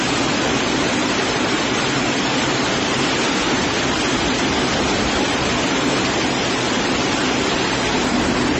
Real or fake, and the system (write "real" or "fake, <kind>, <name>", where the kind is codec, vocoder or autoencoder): real